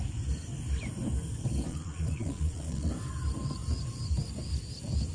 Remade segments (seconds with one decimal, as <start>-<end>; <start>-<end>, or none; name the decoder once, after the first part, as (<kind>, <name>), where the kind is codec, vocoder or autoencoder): 1.7-2.9 (vocoder, Vocos)